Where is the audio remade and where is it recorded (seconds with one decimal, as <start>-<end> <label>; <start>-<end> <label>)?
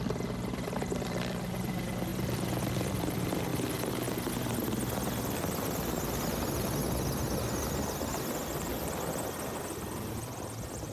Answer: 0.0-3.5 remade; 3.5-5.2 recorded; 5.2-6.8 remade; 6.8-9.6 recorded; 9.6-10.9 remade